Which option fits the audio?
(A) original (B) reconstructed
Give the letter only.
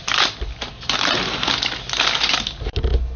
A